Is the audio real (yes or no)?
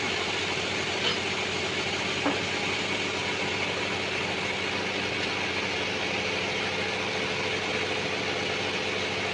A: yes